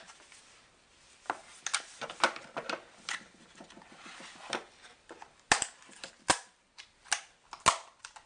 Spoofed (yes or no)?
no